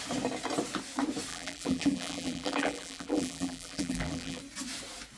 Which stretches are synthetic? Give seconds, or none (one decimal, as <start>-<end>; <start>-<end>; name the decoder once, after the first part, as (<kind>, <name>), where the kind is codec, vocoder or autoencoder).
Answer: 1.3-4.4 (vocoder, BigVGAN v2)